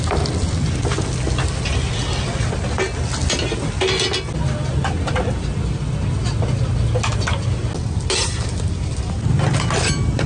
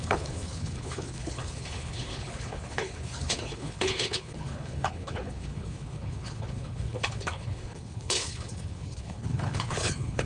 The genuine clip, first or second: first